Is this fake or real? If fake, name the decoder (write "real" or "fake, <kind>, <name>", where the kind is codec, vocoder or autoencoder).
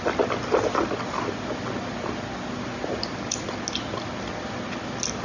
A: real